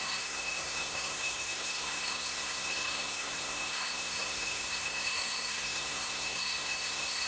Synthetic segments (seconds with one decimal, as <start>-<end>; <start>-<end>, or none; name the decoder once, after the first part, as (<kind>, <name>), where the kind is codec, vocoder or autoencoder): 0.0-7.3 (codec, SNAC)